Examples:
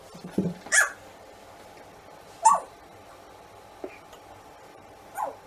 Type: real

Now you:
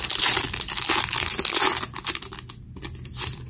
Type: real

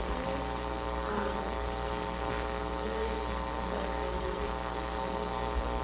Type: fake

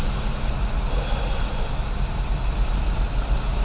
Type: real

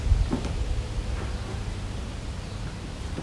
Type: real